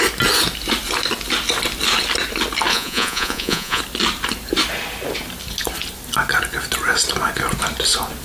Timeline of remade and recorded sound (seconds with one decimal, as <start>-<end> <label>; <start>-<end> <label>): 0.0-2.7 recorded; 2.7-3.8 remade; 3.8-8.2 recorded